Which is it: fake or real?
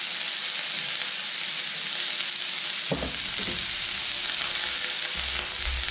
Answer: real